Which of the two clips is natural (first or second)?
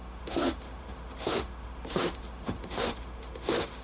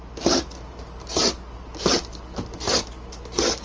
second